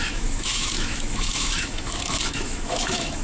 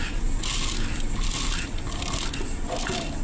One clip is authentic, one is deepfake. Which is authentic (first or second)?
second